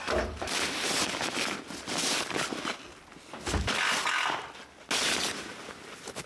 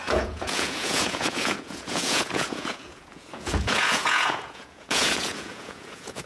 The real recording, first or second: first